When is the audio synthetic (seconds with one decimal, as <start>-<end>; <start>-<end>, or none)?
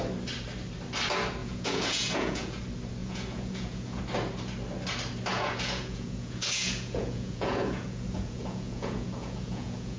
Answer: 1.4-2.6; 3.0-4.0; 5.3-10.0